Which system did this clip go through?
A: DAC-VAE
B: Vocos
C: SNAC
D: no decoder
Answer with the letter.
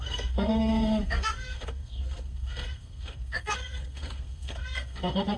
C